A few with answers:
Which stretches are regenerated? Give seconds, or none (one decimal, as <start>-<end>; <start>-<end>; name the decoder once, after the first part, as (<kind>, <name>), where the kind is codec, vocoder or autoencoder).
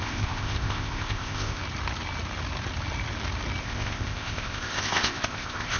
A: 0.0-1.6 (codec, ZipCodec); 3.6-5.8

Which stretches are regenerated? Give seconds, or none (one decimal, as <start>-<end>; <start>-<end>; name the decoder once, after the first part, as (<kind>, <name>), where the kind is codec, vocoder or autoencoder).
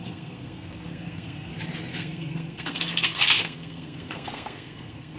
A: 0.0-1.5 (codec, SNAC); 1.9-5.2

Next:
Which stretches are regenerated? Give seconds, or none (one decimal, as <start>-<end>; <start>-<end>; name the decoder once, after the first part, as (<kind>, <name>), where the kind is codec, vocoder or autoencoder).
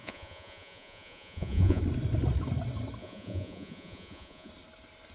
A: 0.0-1.8 (vocoder, Vocos); 3.0-4.5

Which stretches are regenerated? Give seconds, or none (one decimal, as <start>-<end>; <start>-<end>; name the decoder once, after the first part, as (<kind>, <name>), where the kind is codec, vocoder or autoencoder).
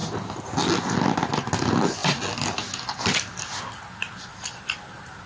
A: none